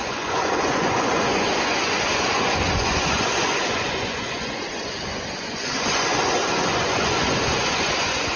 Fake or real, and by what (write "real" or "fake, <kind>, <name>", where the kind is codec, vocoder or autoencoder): fake, vocoder, Vocos